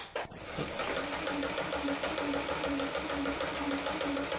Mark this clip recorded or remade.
recorded